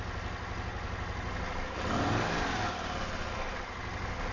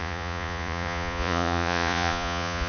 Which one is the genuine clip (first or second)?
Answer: first